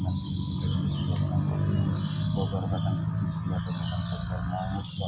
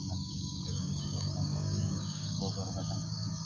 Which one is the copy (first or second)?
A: second